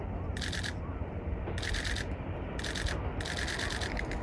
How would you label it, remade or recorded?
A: recorded